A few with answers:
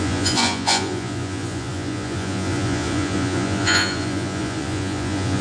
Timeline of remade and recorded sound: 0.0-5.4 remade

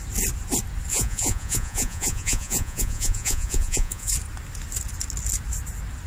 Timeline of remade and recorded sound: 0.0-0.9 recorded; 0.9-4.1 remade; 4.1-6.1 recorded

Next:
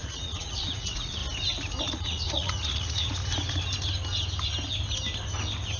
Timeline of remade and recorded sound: 0.0-1.2 remade; 1.2-1.8 recorded; 1.8-3.2 remade; 3.2-5.8 recorded

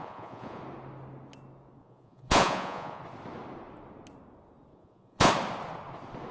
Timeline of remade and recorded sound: 0.0-0.6 remade; 0.6-1.8 recorded; 1.8-3.0 remade; 3.0-4.7 recorded; 4.7-5.3 remade; 5.3-6.3 recorded

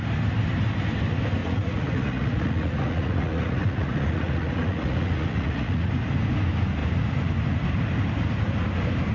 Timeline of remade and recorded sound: 0.0-1.4 recorded; 1.4-5.9 remade; 5.9-9.1 recorded

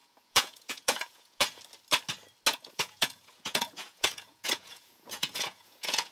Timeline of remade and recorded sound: 0.0-1.6 remade; 1.6-2.5 recorded; 2.5-6.1 remade